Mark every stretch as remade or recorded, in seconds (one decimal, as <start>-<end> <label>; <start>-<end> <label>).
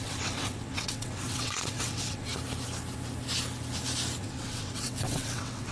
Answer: 0.0-2.3 remade; 2.3-4.2 recorded; 4.2-5.7 remade